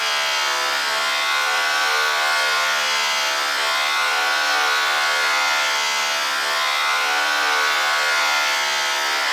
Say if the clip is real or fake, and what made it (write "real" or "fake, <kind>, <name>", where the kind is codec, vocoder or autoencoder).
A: real